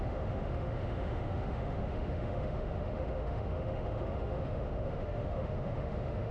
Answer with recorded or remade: remade